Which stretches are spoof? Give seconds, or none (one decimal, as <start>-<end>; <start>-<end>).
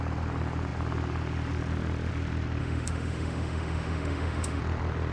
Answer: 2.6-4.6